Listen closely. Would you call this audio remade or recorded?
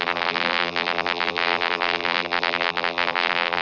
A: remade